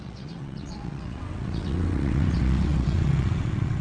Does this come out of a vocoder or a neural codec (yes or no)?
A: yes